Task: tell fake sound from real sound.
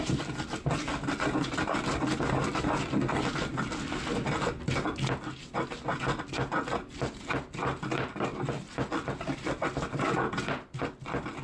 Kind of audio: real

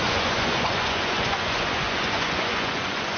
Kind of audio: fake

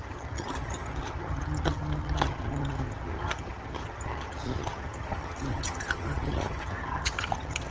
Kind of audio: fake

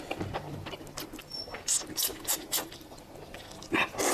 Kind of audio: real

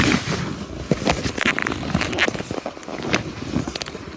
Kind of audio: real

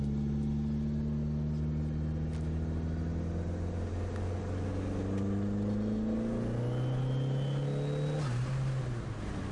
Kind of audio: real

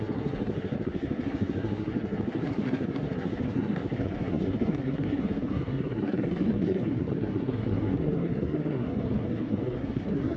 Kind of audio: fake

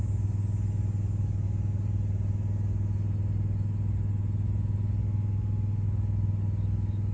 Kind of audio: real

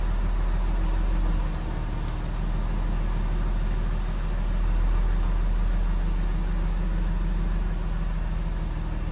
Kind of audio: real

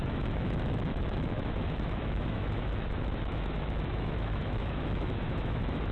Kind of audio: fake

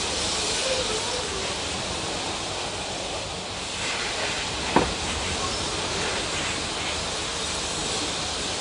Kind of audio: real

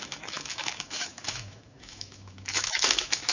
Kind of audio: fake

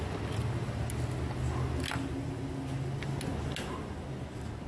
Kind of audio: real